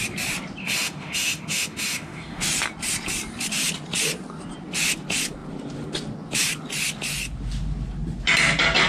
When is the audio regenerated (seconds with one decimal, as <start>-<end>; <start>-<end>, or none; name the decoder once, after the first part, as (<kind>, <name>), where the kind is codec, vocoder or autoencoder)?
0.6-2.4 (autoencoder, DAC-VAE)